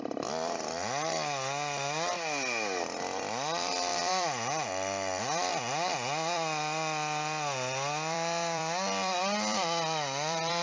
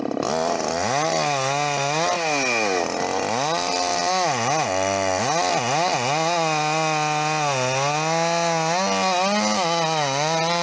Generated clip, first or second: first